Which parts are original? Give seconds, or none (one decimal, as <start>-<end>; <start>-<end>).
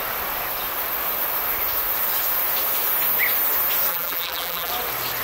0.0-3.9; 4.7-5.2